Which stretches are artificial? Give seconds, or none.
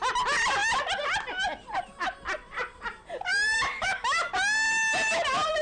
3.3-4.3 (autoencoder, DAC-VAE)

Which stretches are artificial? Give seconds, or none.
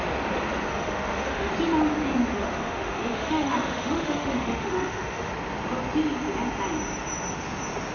0.7-1.5 (autoencoder, DAC-VAE); 2.3-5.3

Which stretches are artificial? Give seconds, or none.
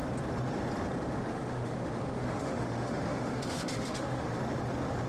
1.3-4.4 (autoencoder, DAC-VAE)